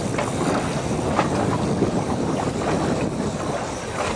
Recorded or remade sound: recorded